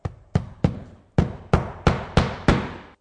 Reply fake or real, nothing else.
real